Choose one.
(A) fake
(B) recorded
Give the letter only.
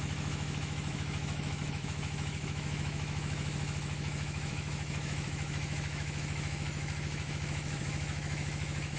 A